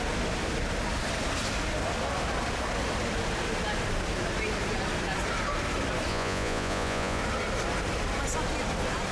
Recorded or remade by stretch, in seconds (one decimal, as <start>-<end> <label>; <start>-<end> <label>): 0.0-6.1 recorded; 6.1-7.2 remade; 7.2-9.1 recorded